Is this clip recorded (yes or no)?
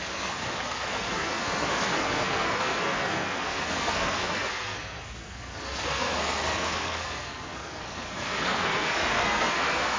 no